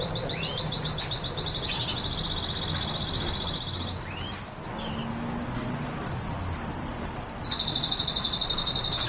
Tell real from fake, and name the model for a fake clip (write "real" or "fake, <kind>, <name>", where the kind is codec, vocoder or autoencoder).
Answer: real